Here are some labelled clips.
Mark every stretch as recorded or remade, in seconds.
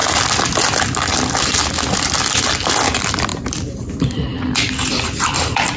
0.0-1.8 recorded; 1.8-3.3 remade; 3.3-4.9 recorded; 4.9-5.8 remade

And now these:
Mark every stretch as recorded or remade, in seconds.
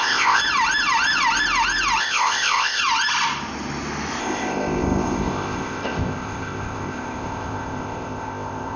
0.0-0.4 remade; 0.4-2.0 recorded; 2.0-2.8 remade; 2.8-4.2 recorded; 4.2-8.8 remade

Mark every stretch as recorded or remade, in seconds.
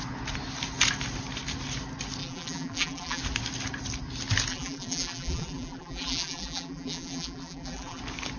0.0-2.2 recorded; 2.2-3.2 remade; 3.2-4.5 recorded; 4.5-8.0 remade; 8.0-8.4 recorded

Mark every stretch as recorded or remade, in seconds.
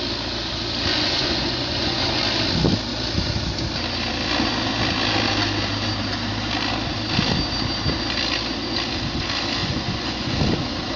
0.0-0.9 recorded; 0.9-2.2 remade; 2.2-9.6 recorded; 9.6-10.4 remade; 10.4-11.0 recorded